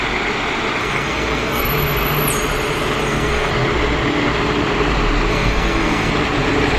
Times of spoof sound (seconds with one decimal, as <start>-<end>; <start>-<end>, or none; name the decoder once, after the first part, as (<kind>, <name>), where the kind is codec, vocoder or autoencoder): 0.8-1.6 (codec, SNAC); 3.0-3.5; 5.3-6.1